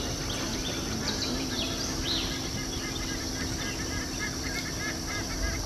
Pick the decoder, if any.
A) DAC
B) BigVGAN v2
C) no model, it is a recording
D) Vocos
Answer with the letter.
C